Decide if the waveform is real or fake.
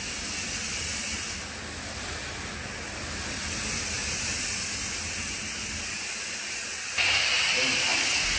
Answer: real